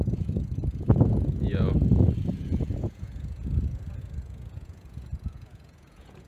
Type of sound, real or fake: fake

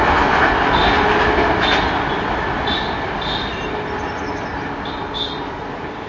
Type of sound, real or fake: real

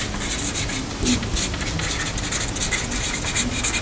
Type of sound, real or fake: real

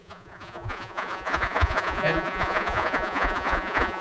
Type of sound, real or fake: fake